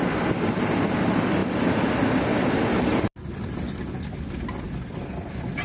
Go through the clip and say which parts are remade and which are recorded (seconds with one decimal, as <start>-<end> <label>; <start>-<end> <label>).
0.0-5.6 recorded